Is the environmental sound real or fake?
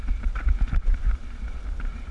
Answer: real